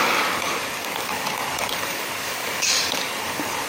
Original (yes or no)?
no